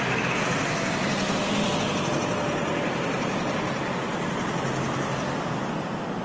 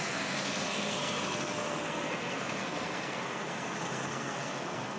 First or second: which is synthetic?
second